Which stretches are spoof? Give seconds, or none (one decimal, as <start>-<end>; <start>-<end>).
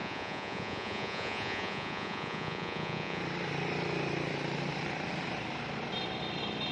0.0-3.2